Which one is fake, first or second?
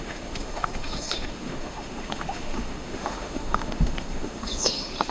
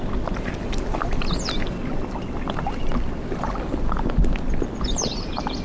first